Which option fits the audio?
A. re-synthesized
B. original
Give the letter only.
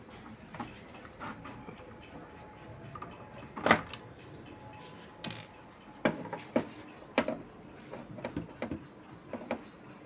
B